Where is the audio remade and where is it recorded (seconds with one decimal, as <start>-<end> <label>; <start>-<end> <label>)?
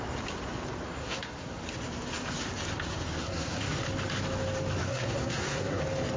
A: 0.0-1.0 recorded; 1.0-1.6 remade; 1.6-3.2 recorded; 3.2-3.8 remade; 3.8-4.8 recorded; 4.8-5.8 remade; 5.8-6.2 recorded